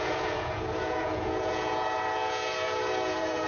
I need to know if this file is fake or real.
fake